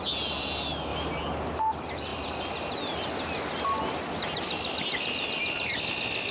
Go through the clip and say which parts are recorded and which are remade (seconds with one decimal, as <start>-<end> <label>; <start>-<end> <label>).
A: 0.0-6.3 recorded